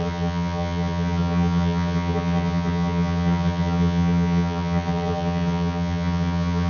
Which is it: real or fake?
fake